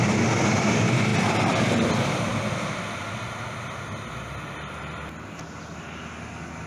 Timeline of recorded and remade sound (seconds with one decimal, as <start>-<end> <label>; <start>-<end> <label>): 0.0-1.1 recorded; 1.1-1.9 remade; 1.9-6.7 recorded